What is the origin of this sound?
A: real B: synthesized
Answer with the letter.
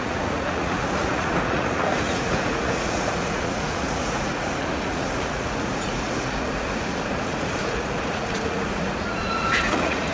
B